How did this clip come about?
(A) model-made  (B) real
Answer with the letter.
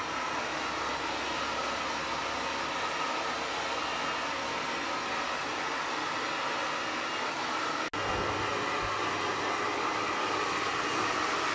B